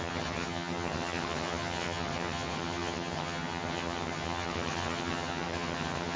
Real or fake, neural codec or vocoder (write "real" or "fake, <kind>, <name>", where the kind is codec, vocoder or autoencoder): fake, vocoder, HiFi-GAN